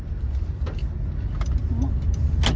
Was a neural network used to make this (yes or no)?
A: no